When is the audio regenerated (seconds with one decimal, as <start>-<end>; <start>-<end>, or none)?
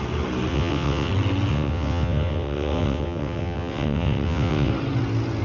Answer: 0.5-1.1; 1.5-4.7